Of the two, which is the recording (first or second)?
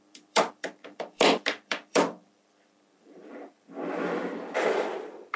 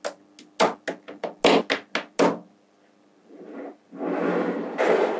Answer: second